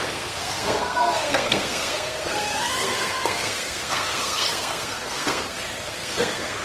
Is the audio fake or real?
fake